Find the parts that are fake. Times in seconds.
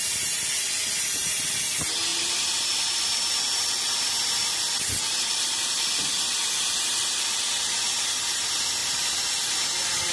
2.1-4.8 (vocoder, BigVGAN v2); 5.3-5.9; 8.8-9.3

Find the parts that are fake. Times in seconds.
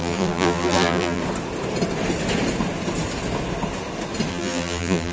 0.0-1.2 (vocoder, BigVGAN v2); 4.3-5.1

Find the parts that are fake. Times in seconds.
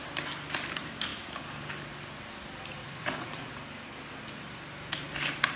2.8-3.5 (vocoder, Vocos)